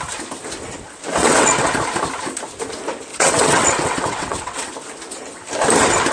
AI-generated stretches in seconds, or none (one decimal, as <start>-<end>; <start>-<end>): 1.2-1.7; 3.1-4.7

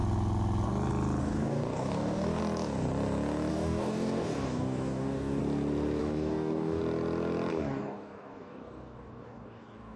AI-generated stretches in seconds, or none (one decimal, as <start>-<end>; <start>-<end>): 1.2-2.4; 3.5-5.4; 6.0-6.8; 7.5-10.0

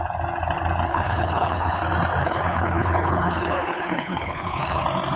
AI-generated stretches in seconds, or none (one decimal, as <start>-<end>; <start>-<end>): 0.9-1.8; 2.2-4.8

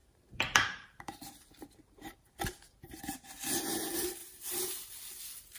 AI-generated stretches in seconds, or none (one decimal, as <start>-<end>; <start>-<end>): 0.0-3.4; 4.2-4.7

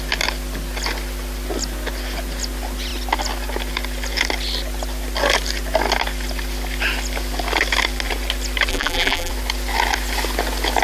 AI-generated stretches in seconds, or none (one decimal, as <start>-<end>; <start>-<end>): 8.7-9.3

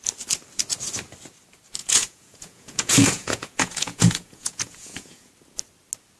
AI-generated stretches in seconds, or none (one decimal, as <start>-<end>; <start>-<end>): 1.8-5.3

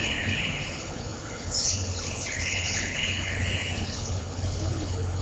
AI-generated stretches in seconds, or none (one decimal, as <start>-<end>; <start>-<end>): 0.0-5.2